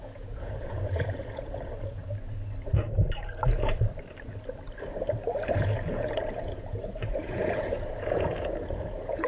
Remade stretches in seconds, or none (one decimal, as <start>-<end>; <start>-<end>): 0.0-2.0; 5.6-9.3